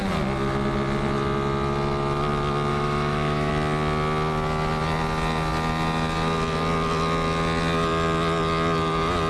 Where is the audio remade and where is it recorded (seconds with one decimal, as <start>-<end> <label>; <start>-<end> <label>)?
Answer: 0.0-2.7 recorded; 2.7-3.5 remade; 3.5-9.3 recorded